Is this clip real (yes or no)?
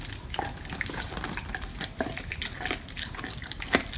yes